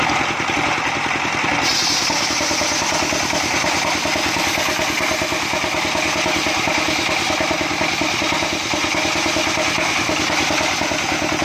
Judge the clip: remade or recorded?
recorded